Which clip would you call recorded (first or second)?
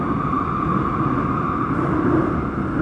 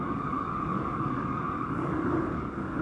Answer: first